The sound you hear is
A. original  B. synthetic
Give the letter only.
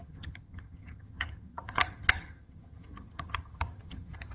B